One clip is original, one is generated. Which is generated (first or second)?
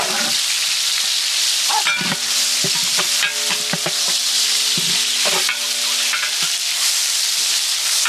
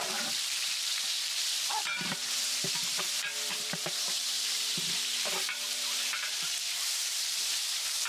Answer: second